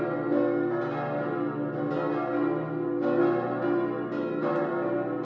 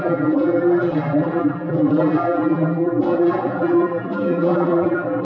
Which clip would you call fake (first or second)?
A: second